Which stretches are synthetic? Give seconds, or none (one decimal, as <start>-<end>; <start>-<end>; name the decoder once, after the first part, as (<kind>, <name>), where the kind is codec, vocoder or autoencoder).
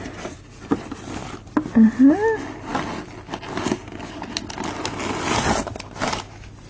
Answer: none